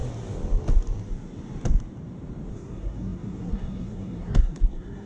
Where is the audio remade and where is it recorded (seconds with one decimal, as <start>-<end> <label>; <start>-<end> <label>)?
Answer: 0.0-2.5 recorded; 2.5-5.1 remade